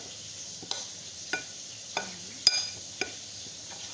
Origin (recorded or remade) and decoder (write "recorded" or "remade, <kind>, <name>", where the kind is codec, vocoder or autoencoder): recorded